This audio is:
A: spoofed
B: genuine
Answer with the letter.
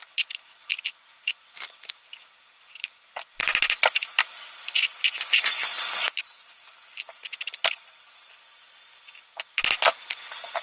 B